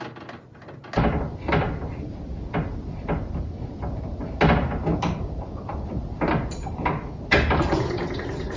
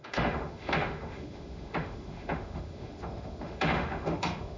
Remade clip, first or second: second